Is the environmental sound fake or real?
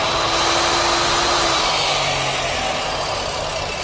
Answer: real